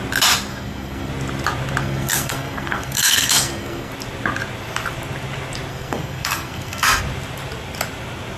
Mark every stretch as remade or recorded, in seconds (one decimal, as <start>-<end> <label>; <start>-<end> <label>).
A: 0.0-0.5 recorded; 0.5-1.1 remade; 1.1-1.8 recorded; 1.8-3.9 remade; 3.9-5.7 recorded; 5.7-7.0 remade; 7.0-8.4 recorded